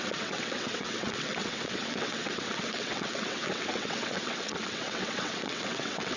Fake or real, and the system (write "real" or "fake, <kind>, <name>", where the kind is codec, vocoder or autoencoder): fake, vocoder, WaveNeXt